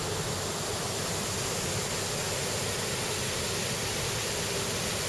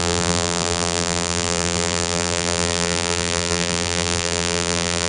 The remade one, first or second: second